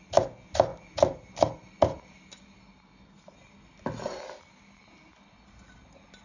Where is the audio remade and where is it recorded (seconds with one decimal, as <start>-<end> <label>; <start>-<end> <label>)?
0.0-6.2 recorded